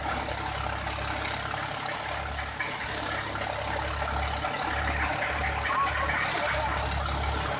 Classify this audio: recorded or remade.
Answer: recorded